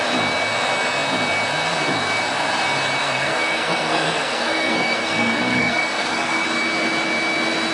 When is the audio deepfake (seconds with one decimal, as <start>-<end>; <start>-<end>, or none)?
3.0-6.4